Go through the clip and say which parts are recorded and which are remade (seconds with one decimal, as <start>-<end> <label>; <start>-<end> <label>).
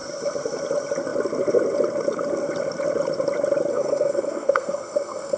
0.0-3.7 recorded; 3.7-5.4 remade